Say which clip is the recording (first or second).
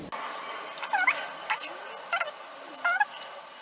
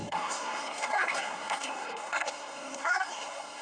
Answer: first